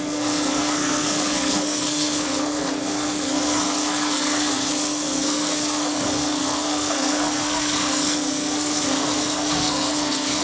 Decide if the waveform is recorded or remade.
remade